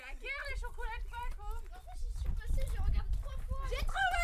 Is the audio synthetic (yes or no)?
no